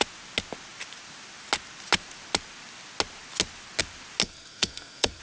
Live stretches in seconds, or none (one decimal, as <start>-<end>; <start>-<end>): 0.0-4.2